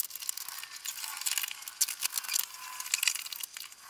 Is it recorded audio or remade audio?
recorded